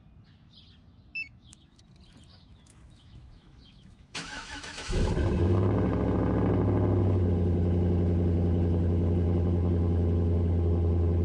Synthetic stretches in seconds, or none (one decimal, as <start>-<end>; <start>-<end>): 1.1-1.8; 2.3-5.1